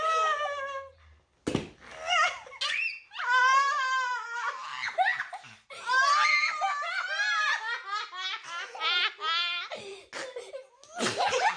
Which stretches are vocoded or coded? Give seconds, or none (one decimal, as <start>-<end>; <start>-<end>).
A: none